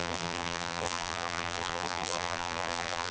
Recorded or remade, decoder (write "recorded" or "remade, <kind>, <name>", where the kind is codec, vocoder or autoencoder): remade, vocoder, BigVGAN v2